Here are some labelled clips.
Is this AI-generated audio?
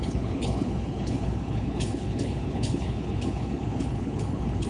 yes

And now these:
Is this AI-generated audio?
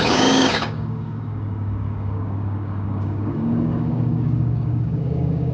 yes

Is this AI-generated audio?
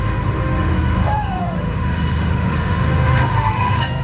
yes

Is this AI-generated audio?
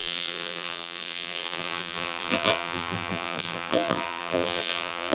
yes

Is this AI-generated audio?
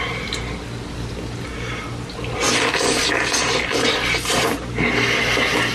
yes